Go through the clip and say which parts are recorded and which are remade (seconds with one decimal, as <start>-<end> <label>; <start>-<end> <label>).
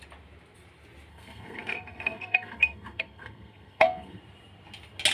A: 0.0-1.1 recorded; 1.1-4.2 remade; 4.2-5.1 recorded